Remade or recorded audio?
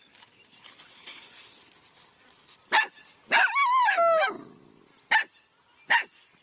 recorded